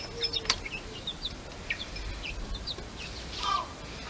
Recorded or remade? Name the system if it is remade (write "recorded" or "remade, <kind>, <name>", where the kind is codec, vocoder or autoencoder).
recorded